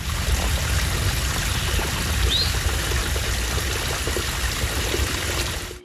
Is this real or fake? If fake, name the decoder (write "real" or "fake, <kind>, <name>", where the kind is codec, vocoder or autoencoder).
real